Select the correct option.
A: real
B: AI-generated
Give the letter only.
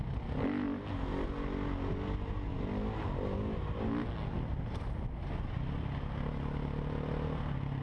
A